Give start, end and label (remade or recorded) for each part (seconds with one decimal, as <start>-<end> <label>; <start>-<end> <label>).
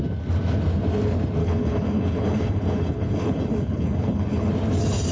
0.0-1.4 recorded; 1.4-4.5 remade; 4.5-5.1 recorded